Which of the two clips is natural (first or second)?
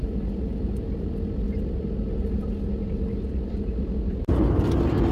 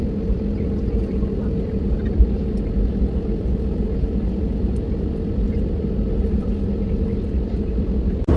first